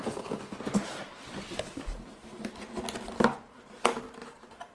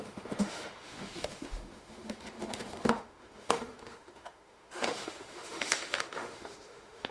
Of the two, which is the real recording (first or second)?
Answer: first